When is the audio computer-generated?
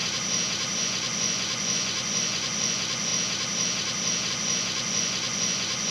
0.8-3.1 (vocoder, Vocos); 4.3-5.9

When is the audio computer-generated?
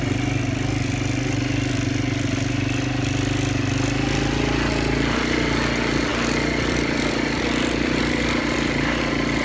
6.1-9.0 (vocoder, BigVGAN v2)